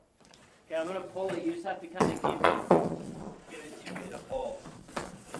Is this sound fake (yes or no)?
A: yes